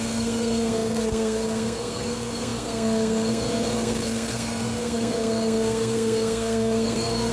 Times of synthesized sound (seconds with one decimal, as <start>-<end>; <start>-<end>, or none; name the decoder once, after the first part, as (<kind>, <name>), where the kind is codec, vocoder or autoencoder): 0.0-7.3 (codec, SNAC)